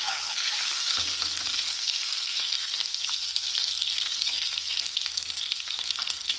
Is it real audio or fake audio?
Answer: fake